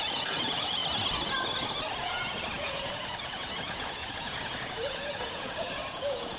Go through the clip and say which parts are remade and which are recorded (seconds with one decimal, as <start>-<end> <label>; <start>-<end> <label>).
0.0-0.8 remade; 0.8-2.0 recorded; 2.0-6.4 remade